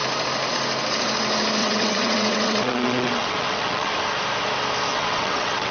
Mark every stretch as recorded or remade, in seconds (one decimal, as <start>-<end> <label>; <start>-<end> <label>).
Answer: 0.0-1.6 recorded; 1.6-3.9 remade; 3.9-4.9 recorded; 4.9-5.7 remade